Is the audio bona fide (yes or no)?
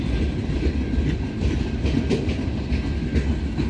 yes